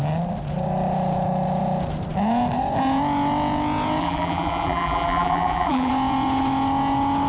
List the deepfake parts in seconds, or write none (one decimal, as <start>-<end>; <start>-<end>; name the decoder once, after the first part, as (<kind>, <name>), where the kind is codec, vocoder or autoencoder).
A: 4.0-5.9 (vocoder, BigVGAN v2)